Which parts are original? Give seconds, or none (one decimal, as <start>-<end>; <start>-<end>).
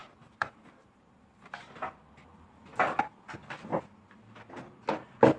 2.6-5.4